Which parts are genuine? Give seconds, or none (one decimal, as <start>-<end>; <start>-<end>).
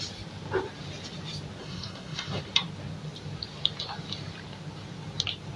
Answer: 0.0-1.6; 2.4-5.6